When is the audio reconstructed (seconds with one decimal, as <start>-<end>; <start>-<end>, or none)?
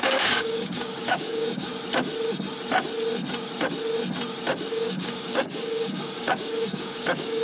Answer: 0.0-1.7; 4.7-7.4